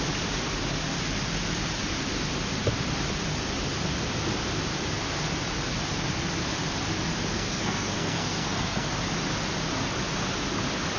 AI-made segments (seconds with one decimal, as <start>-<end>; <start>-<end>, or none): 7.3-8.9